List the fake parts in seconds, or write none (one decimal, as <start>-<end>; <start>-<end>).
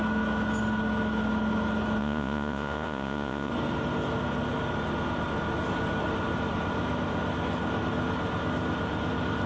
2.0-3.5